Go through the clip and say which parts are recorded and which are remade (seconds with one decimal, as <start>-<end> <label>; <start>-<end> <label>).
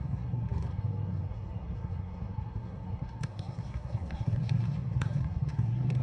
0.0-6.0 remade